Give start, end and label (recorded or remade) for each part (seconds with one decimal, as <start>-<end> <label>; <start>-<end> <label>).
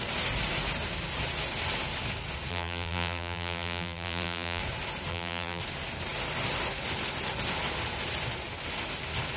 0.0-2.5 recorded; 2.5-4.6 remade; 4.6-5.1 recorded; 5.1-5.6 remade; 5.6-9.4 recorded